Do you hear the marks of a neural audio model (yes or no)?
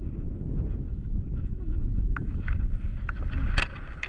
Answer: no